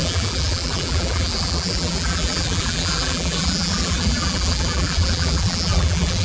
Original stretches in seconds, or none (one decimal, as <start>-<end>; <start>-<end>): none